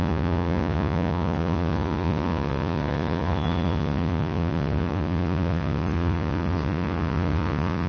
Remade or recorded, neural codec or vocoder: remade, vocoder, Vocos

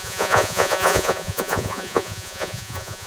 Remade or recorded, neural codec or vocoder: remade, vocoder, Vocos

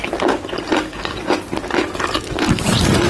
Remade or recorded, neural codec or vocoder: recorded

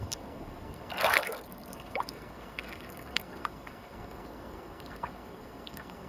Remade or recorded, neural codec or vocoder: remade, codec, SNAC